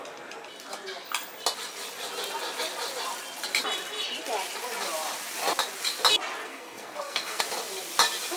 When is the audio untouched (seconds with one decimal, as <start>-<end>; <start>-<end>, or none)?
0.0-6.4; 7.4-8.4